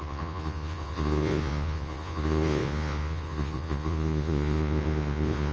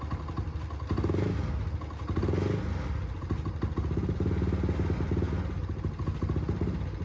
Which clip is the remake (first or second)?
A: first